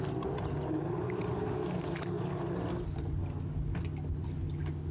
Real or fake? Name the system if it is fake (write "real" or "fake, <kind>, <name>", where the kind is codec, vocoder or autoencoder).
real